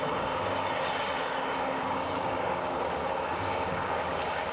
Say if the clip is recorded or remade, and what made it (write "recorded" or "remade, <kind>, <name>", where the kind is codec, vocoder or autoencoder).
remade, codec, DAC